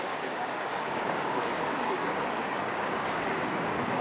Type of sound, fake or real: fake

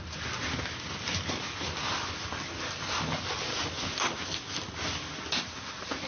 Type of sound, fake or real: real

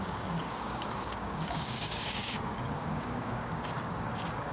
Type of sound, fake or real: fake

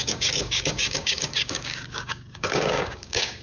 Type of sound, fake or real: fake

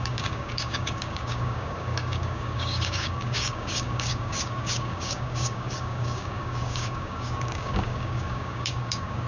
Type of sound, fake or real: fake